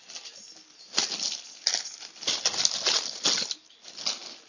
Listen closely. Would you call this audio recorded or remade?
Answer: recorded